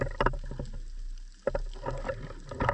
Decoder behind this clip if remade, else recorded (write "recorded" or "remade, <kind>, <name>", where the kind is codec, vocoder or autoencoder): recorded